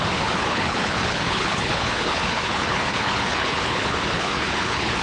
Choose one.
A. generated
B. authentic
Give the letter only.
A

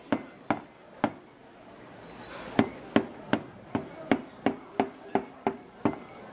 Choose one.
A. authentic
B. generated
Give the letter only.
A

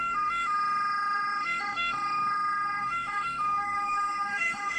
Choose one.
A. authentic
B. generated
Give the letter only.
B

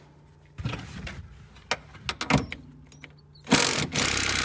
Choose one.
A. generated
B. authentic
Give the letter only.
B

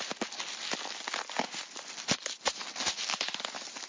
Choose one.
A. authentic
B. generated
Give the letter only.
A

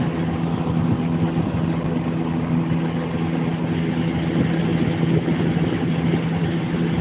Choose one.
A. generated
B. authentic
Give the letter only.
B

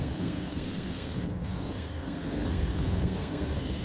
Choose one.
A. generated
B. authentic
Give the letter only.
A